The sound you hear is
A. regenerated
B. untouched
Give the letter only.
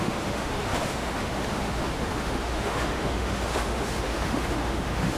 A